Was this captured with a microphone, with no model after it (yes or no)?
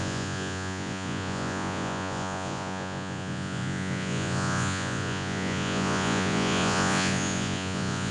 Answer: no